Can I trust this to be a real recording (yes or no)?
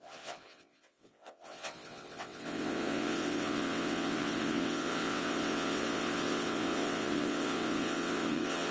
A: no